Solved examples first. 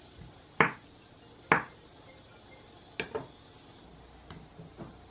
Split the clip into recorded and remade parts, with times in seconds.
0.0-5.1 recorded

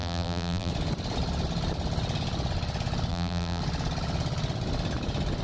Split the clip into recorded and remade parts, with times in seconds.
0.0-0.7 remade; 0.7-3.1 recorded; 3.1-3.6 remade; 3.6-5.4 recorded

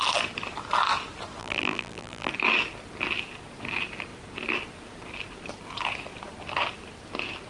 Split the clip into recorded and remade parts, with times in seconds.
0.0-1.4 recorded; 1.4-2.3 remade; 2.3-7.5 recorded

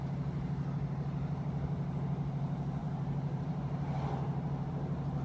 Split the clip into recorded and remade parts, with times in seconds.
0.0-2.8 recorded; 2.8-4.7 remade; 4.7-5.2 recorded

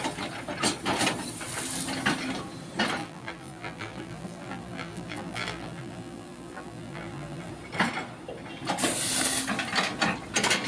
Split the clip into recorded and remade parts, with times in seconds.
0.0-3.0 recorded; 3.0-7.5 remade; 7.5-10.7 recorded

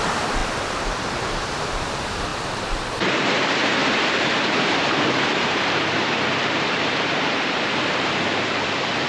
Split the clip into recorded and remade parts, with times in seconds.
0.0-9.1 remade

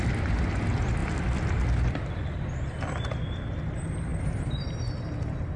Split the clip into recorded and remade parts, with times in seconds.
0.0-1.0 recorded; 1.0-3.0 remade; 3.0-4.1 recorded; 4.1-5.6 remade